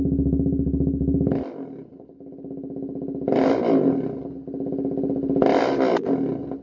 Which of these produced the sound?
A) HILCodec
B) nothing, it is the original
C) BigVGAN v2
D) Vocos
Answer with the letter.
B